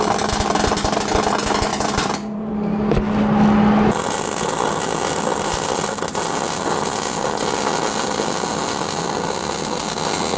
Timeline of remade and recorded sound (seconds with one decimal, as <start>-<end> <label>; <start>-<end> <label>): 0.0-1.7 recorded; 1.7-2.5 remade; 2.5-10.4 recorded